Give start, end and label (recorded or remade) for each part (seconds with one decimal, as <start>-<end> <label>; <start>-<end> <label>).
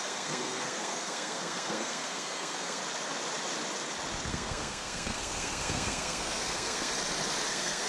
0.0-2.8 remade; 2.8-4.3 recorded; 4.3-6.9 remade; 6.9-7.5 recorded; 7.5-7.9 remade